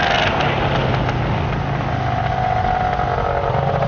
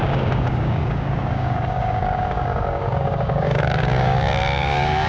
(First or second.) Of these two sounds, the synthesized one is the second